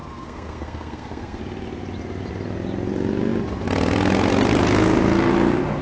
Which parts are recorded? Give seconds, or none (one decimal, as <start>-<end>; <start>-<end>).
1.4-5.8